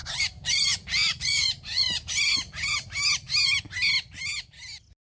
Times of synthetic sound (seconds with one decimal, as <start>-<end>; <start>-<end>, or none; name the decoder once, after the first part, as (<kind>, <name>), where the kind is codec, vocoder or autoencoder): 0.0-2.3 (vocoder, BigVGAN v2)